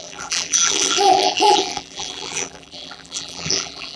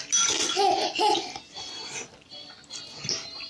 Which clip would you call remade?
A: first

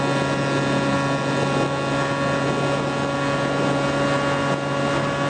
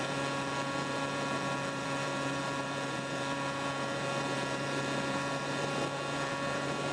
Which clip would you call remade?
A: second